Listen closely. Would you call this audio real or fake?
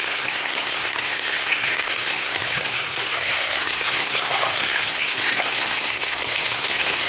fake